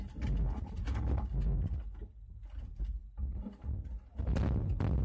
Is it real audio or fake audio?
real